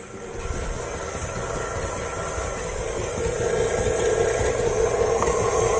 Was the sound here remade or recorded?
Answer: recorded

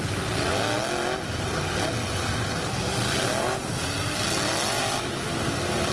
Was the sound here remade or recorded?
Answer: recorded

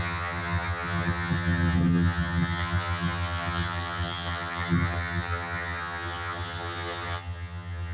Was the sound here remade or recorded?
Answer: remade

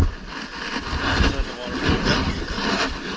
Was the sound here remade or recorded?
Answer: recorded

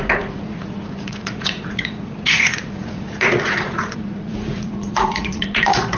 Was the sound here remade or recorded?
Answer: remade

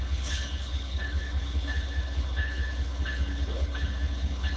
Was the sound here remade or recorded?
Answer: remade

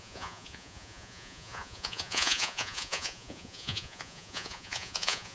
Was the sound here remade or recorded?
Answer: remade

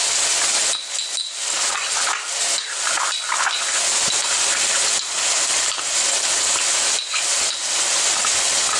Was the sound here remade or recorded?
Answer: recorded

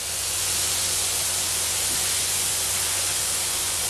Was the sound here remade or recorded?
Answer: remade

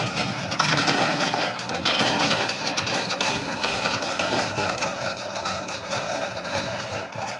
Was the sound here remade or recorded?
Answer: remade